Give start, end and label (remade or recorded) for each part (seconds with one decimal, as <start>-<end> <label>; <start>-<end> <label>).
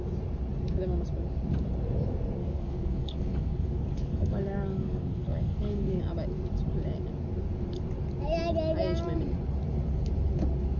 0.0-2.4 recorded; 2.4-6.0 remade; 6.0-10.8 recorded